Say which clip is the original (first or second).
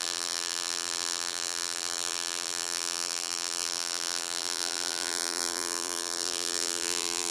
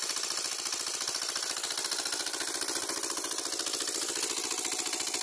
second